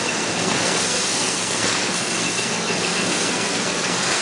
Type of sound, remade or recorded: remade